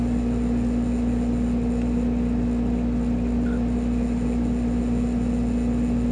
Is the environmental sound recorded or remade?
recorded